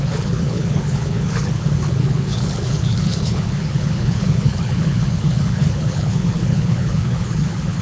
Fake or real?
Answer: fake